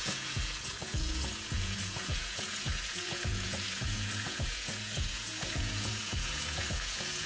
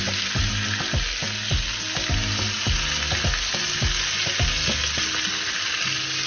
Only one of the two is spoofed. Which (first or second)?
first